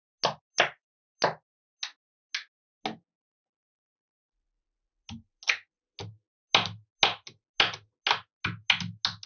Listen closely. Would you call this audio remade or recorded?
recorded